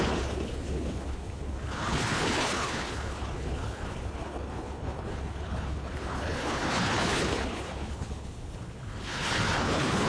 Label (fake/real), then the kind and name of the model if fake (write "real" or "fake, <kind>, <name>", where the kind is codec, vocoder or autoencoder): fake, codec, HILCodec